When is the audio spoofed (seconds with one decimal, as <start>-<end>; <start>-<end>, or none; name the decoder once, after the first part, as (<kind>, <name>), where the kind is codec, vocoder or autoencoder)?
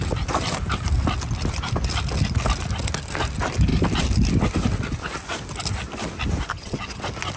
6.5-7.0 (vocoder, HiFi-GAN)